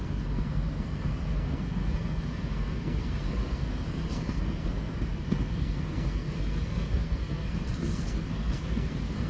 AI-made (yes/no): yes